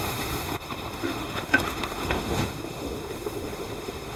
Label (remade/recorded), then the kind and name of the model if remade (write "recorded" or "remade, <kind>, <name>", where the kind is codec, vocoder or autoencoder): remade, autoencoder, DAC-VAE